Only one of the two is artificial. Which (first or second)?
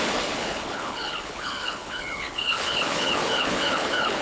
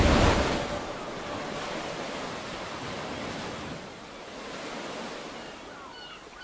first